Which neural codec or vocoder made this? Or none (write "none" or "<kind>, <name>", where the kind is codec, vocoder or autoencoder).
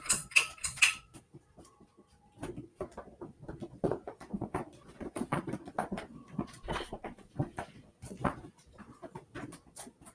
vocoder, Vocos